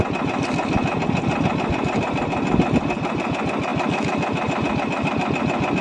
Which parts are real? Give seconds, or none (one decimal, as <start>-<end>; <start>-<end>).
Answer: 0.0-5.8